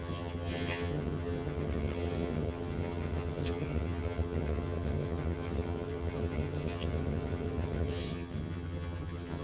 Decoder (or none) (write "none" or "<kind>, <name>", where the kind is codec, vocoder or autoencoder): vocoder, HiFi-GAN